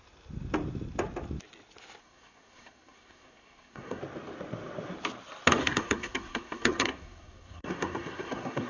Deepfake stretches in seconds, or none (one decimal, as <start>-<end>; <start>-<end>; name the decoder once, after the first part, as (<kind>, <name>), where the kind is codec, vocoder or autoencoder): 2.0-4.0 (codec, SNAC); 5.6-8.7